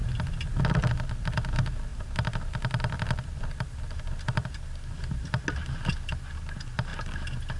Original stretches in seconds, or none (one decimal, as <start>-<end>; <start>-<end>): 0.0-7.6